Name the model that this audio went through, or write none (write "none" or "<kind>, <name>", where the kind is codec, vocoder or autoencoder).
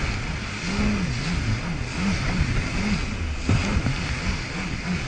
none